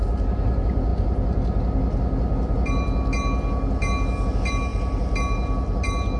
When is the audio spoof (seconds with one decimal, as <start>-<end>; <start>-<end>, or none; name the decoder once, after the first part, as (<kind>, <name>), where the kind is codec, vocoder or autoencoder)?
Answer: none